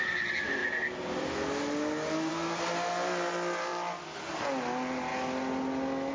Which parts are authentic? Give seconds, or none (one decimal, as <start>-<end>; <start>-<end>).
0.0-6.1